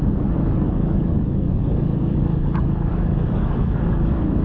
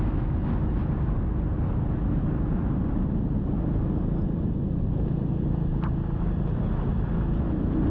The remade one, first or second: first